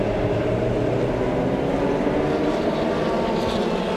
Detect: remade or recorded recorded